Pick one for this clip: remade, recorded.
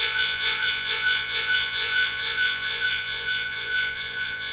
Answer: remade